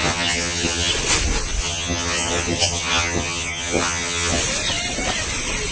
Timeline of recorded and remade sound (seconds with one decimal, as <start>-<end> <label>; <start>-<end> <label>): 0.0-0.9 remade; 0.9-1.6 recorded; 1.6-4.4 remade; 4.4-5.7 recorded